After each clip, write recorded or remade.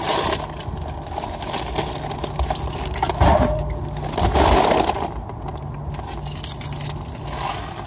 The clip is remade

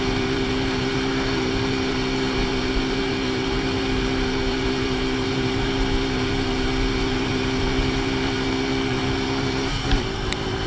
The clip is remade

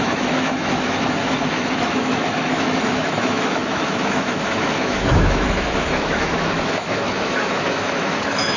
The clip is remade